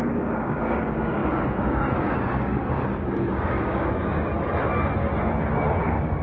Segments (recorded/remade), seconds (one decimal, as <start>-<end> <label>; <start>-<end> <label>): 0.0-4.3 remade; 4.3-5.8 recorded; 5.8-6.2 remade